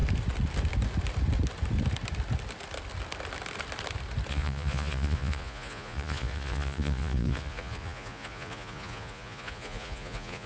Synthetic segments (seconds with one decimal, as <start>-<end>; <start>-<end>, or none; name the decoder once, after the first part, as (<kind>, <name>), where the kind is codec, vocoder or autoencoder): 4.3-10.5 (vocoder, Vocos)